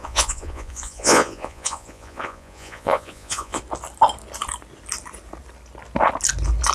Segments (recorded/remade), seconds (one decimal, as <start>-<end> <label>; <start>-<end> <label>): 0.0-3.6 remade; 3.6-6.7 recorded